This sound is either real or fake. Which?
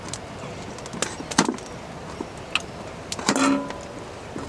real